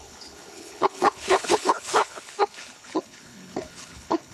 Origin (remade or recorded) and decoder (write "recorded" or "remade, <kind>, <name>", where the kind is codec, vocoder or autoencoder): remade, codec, HILCodec